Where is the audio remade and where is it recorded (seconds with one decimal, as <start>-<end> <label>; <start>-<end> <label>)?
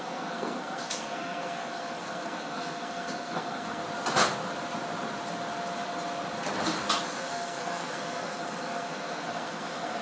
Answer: 0.0-3.8 remade; 3.8-7.2 recorded; 7.2-10.0 remade